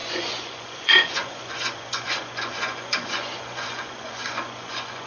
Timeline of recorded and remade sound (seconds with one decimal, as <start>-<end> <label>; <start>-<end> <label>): 0.0-5.1 remade

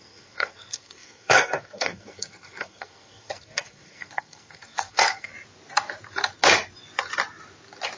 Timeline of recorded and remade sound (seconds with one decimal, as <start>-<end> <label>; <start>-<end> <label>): 0.0-5.3 remade; 5.3-8.0 recorded

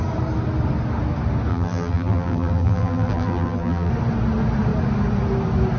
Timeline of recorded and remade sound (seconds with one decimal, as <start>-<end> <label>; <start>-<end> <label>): 0.0-1.5 recorded; 1.5-3.9 remade; 3.9-5.8 recorded

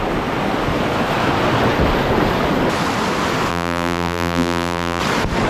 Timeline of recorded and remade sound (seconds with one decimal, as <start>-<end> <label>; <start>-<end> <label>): 0.0-3.5 recorded; 3.5-5.0 remade; 5.0-5.5 recorded

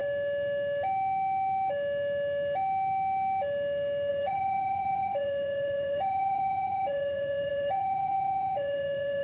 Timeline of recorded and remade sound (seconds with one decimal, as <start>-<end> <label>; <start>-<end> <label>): 0.0-4.1 recorded; 4.1-9.2 remade

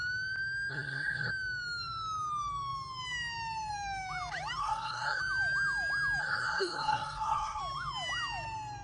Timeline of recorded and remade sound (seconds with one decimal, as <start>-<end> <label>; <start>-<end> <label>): 0.0-0.7 recorded; 0.7-1.3 remade; 1.3-4.6 recorded; 4.6-5.2 remade; 5.2-6.2 recorded; 6.2-7.6 remade; 7.6-8.8 recorded